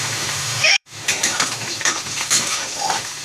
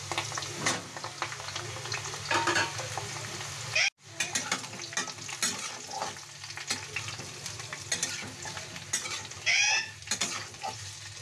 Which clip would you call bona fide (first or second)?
second